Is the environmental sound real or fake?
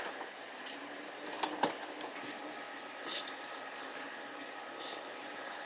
real